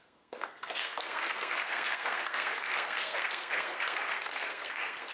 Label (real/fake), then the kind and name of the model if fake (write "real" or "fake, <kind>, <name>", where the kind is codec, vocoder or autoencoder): fake, codec, SNAC